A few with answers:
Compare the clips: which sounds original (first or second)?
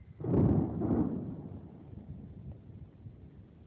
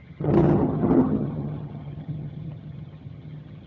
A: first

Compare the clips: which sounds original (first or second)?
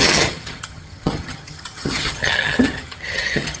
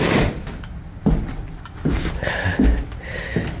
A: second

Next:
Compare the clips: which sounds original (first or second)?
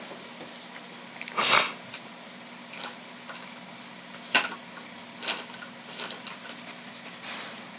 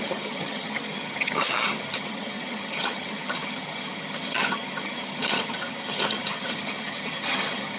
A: first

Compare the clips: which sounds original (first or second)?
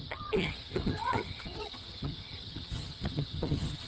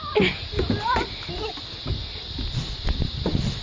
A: second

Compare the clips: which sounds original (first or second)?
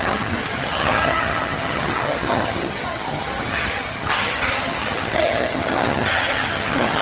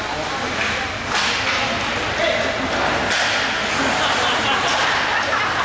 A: second